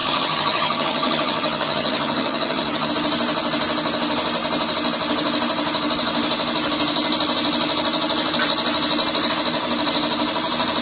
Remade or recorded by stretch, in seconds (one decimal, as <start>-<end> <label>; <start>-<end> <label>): 0.0-2.9 remade; 2.9-10.8 recorded